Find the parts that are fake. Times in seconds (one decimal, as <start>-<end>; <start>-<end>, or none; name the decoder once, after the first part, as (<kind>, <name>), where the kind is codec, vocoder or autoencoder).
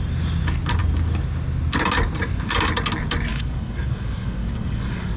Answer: 3.3-5.2 (codec, DAC)